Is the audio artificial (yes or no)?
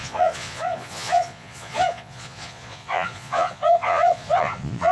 yes